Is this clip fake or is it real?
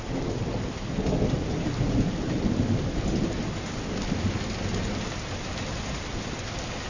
real